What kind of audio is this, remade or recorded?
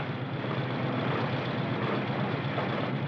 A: recorded